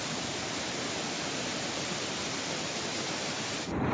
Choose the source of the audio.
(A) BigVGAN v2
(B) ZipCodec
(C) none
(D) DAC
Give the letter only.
C